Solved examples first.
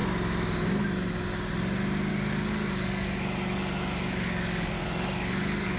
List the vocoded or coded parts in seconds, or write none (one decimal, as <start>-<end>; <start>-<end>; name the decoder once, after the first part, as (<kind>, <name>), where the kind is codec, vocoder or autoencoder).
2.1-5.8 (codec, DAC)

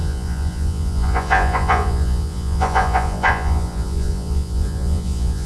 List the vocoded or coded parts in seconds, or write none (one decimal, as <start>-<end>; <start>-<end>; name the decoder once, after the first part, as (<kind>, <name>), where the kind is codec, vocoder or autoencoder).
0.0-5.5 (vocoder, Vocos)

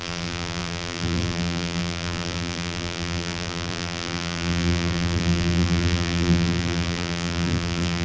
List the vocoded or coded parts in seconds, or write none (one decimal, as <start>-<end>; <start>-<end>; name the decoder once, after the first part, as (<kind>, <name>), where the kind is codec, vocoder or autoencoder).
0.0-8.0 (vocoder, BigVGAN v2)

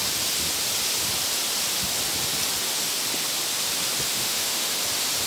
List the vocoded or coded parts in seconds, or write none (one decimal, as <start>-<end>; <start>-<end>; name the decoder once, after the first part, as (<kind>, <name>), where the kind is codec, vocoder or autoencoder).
4.1-4.7 (autoencoder, DAC-VAE)